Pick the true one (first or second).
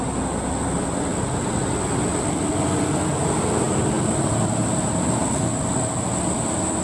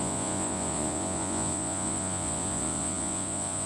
first